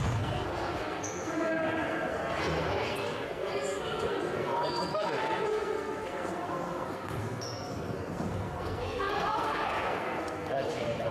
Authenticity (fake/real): fake